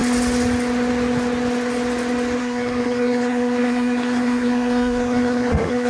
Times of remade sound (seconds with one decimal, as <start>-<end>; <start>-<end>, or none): 2.4-5.9